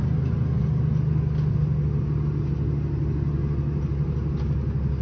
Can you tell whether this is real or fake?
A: real